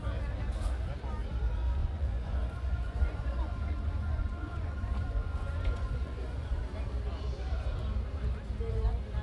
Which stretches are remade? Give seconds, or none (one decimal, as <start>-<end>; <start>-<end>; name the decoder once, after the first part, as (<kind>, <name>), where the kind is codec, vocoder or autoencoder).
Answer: 1.8-6.6 (vocoder, Vocos)